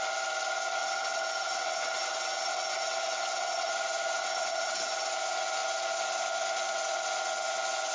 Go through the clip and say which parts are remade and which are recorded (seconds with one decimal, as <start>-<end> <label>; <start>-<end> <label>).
0.0-0.8 recorded; 0.8-3.7 remade; 3.7-4.2 recorded; 4.2-5.1 remade; 5.1-7.9 recorded